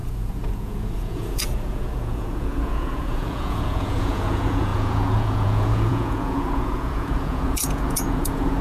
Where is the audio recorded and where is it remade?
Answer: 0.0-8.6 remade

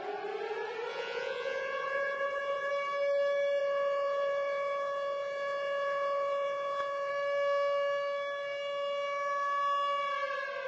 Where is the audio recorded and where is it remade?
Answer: 0.0-0.9 recorded; 0.9-2.7 remade; 2.7-3.6 recorded; 3.6-7.1 remade; 7.1-10.7 recorded

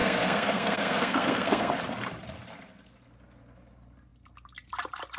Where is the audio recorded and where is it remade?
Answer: 0.0-1.7 remade; 1.7-5.2 recorded

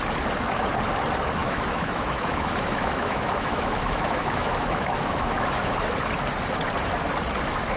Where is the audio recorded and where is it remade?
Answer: 0.0-1.4 recorded; 1.4-5.7 remade; 5.7-7.8 recorded

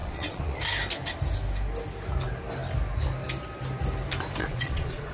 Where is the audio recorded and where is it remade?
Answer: 0.0-0.6 remade; 0.6-4.4 recorded; 4.4-5.1 remade